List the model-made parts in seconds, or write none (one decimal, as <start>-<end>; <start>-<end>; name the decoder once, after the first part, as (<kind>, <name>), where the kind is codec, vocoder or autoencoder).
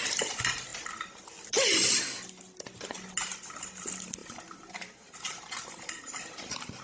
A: 4.2-6.2 (vocoder, BigVGAN v2)